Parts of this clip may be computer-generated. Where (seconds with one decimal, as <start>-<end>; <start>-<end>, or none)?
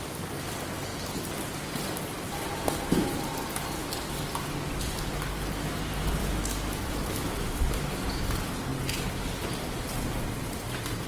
6.2-7.9